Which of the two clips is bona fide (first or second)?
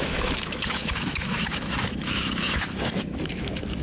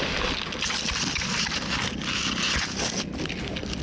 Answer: second